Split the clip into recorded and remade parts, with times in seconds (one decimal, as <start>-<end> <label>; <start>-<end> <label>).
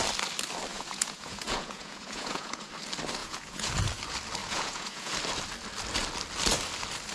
0.0-0.7 recorded; 0.7-2.7 remade; 2.7-3.2 recorded; 3.2-3.7 remade; 3.7-4.4 recorded; 4.4-5.1 remade; 5.1-7.1 recorded